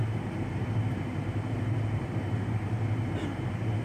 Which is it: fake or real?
fake